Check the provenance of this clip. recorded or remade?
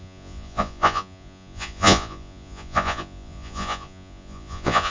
remade